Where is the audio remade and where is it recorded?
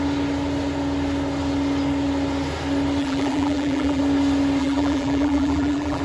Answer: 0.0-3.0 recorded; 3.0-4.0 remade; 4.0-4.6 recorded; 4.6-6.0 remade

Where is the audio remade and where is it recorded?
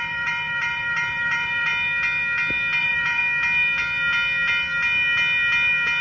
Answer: 0.0-1.7 remade; 1.7-2.8 recorded; 2.8-3.2 remade; 3.2-6.0 recorded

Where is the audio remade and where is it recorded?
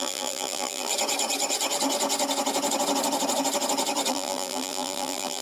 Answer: 0.0-0.9 remade; 0.9-4.1 recorded; 4.1-5.4 remade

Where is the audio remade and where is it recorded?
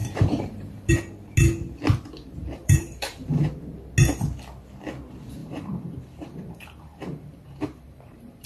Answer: 0.0-0.9 remade; 0.9-2.4 recorded; 2.4-3.4 remade; 3.4-5.4 recorded; 5.4-8.5 remade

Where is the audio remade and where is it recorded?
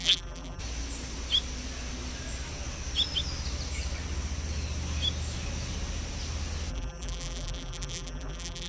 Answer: 0.0-0.6 remade; 0.6-6.7 recorded; 6.7-8.7 remade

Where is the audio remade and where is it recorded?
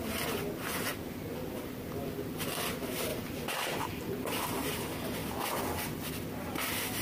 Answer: 0.0-3.1 recorded; 3.1-4.8 remade; 4.8-7.0 recorded